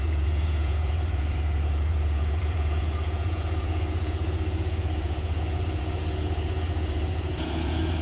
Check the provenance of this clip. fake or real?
fake